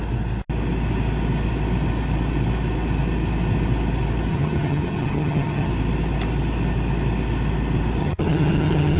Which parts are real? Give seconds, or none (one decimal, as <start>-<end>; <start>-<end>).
0.0-4.3; 5.7-8.0